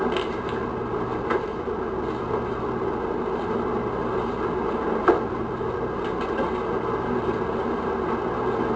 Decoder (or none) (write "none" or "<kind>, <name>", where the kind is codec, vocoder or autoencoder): none